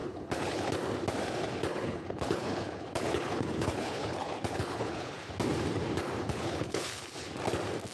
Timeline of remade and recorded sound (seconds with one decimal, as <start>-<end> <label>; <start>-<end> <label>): 0.0-0.7 remade; 0.7-1.7 recorded; 1.7-5.3 remade; 5.3-6.2 recorded; 6.2-7.3 remade; 7.3-7.9 recorded